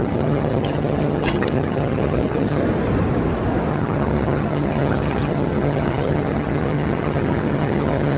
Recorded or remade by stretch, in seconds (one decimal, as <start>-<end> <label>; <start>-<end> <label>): 0.0-2.6 remade; 2.6-3.7 recorded; 3.7-8.2 remade